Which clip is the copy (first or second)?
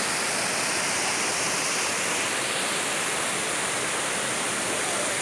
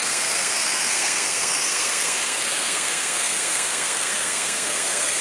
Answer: second